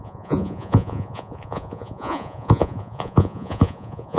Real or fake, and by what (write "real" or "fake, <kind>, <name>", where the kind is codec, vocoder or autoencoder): fake, vocoder, Vocos